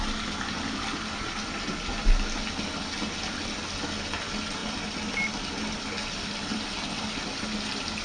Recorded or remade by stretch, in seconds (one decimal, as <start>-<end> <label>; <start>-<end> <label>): 0.0-8.0 recorded